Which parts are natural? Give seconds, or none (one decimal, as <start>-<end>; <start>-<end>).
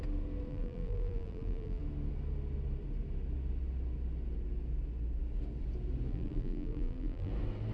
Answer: 0.0-0.5; 1.8-6.1; 7.3-7.7